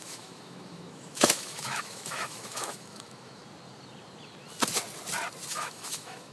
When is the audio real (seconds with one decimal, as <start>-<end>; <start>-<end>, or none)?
3.4-5.5